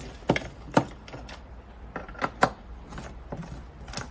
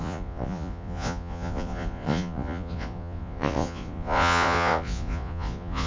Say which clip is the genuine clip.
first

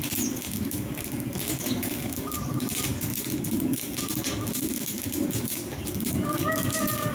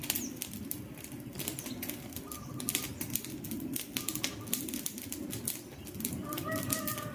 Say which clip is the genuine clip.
second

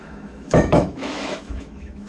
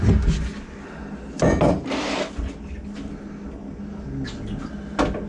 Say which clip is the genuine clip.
second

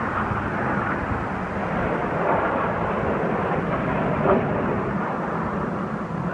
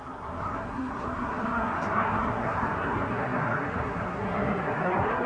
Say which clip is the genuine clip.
first